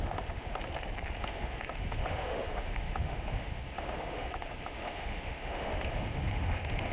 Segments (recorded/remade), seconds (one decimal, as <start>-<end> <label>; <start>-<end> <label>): 0.0-0.5 remade; 0.5-1.2 recorded; 1.2-6.9 remade